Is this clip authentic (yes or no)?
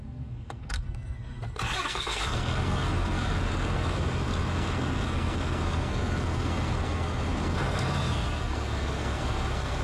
no